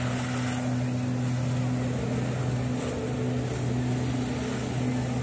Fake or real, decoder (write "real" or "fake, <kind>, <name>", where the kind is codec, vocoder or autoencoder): real